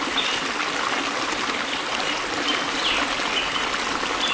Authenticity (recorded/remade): recorded